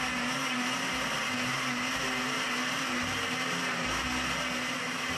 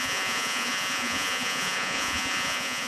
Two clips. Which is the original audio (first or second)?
first